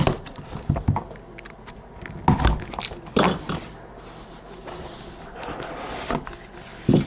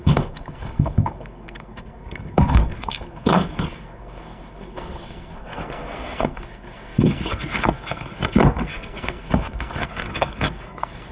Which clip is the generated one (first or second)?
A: second